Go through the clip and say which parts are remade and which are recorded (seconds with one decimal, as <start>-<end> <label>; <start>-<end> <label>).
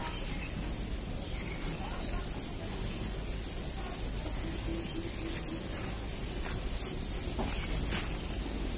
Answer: 0.0-8.8 recorded